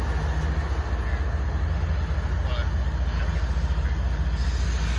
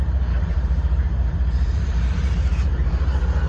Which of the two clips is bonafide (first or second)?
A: first